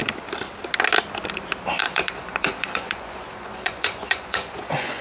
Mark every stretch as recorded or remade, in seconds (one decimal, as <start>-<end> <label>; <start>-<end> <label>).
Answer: 0.0-1.8 recorded; 1.8-5.0 remade